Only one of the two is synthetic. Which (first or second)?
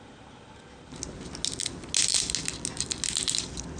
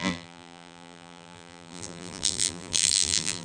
second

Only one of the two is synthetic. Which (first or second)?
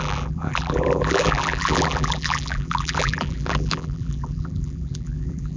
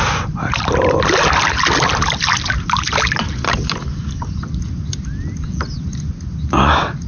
first